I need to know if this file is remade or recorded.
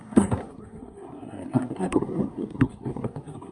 remade